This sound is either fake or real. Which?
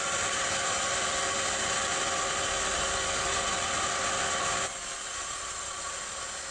real